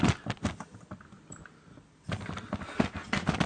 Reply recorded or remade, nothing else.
recorded